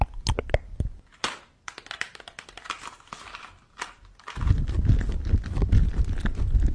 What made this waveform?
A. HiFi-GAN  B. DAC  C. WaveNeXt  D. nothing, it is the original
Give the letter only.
D